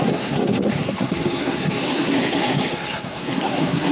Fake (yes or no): yes